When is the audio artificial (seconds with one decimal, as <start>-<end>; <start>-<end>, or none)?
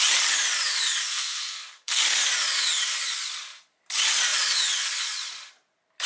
1.1-2.0